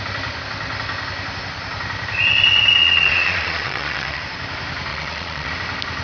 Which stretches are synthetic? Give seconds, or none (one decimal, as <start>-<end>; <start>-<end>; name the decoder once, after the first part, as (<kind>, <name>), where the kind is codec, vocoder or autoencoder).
2.8-4.2 (vocoder, Vocos); 4.9-5.5